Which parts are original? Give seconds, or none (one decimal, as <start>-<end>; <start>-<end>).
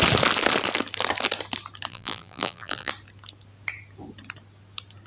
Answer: 0.0-1.9; 2.9-5.1